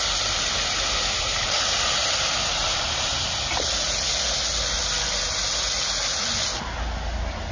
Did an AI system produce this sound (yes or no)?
no